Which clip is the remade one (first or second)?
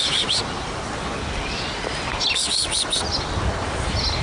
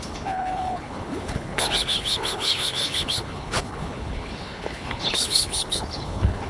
second